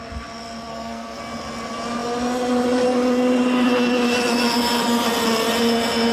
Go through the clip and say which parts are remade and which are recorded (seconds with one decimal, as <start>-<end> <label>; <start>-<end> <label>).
0.0-0.7 recorded; 0.7-1.2 remade; 1.2-6.1 recorded